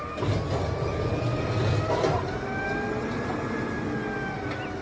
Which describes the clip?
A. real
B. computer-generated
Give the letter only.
A